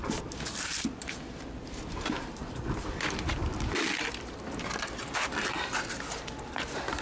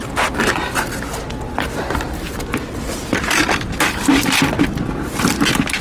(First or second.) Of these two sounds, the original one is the second